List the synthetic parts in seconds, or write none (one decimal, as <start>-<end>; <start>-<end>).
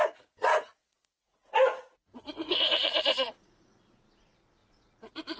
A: 0.0-5.4